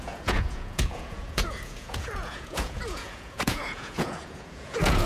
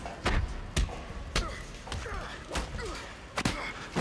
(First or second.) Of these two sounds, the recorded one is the second